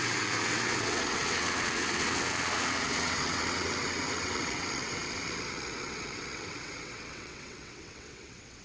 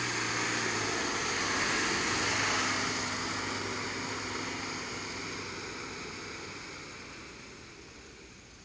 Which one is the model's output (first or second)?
first